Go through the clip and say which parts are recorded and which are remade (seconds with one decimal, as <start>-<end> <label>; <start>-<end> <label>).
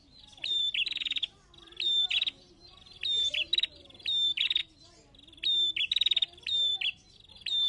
0.0-4.6 remade; 4.6-7.7 recorded